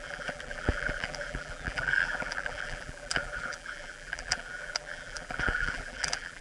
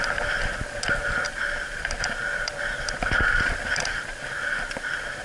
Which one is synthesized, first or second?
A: first